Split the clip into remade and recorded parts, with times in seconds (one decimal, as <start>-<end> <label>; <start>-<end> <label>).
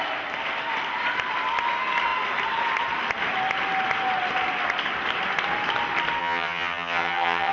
0.0-6.2 recorded; 6.2-7.5 remade